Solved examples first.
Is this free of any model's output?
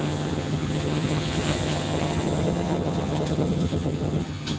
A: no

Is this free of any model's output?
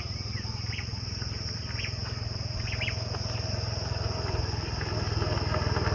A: yes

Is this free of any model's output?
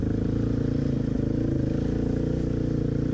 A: yes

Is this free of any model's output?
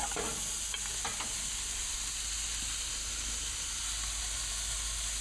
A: yes